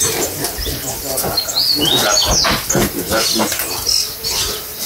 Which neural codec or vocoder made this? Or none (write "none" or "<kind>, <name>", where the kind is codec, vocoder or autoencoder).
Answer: none